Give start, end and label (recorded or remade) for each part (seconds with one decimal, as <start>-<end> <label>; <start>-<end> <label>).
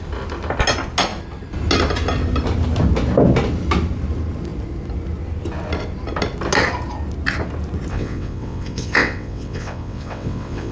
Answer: 0.0-7.9 recorded; 7.9-10.7 remade